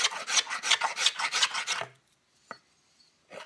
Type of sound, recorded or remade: recorded